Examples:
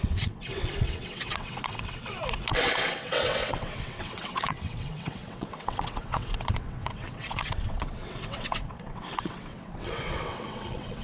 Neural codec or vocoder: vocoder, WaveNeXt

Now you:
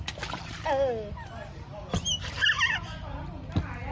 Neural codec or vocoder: none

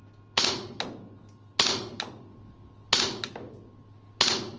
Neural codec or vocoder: none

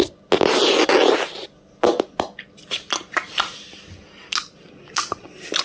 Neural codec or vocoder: none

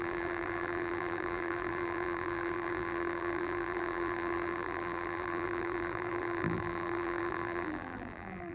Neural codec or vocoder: vocoder, BigVGAN v2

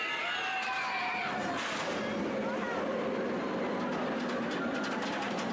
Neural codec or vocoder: none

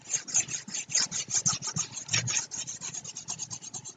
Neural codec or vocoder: none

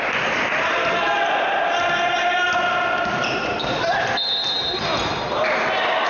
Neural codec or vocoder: none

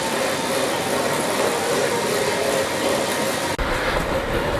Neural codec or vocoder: none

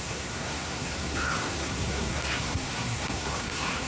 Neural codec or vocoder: codec, SNAC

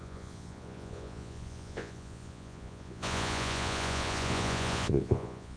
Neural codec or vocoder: vocoder, Vocos